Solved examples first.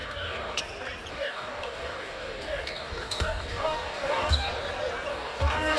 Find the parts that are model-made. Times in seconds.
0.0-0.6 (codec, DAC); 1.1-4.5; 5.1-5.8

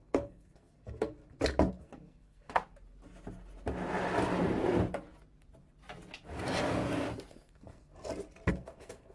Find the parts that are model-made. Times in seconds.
0.0-1.2 (codec, SNAC); 1.7-2.6; 7.3-7.9; 8.5-9.1

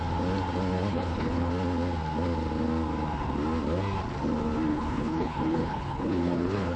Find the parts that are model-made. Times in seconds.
0.9-1.5 (codec, HILCodec); 4.7-6.8

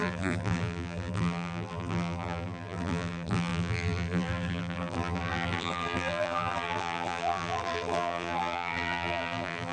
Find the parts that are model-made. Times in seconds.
0.0-9.7 (vocoder, BigVGAN v2)

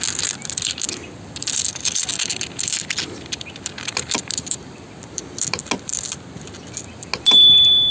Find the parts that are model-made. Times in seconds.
none